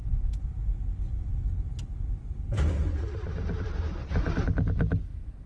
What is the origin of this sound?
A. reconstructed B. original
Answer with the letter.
B